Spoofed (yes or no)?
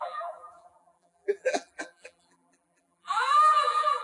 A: yes